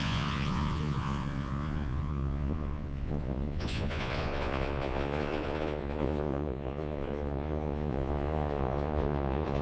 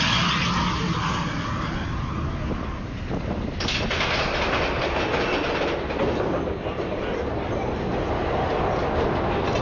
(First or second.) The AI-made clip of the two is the first